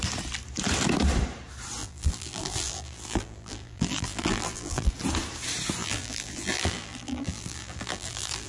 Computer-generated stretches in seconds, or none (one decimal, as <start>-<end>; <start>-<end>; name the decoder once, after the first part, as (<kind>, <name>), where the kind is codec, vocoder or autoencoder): 1.8-4.9 (vocoder, BigVGAN v2); 5.8-8.5